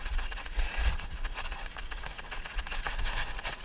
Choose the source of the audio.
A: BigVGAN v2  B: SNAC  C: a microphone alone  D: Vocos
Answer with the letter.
D